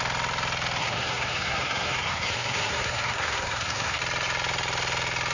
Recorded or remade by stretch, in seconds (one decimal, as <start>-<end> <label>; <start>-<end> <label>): 0.0-0.8 recorded; 0.8-4.0 remade; 4.0-5.3 recorded